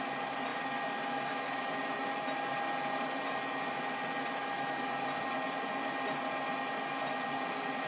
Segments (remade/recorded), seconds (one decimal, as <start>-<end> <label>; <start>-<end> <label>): 0.0-2.0 recorded; 2.0-2.5 remade; 2.5-7.9 recorded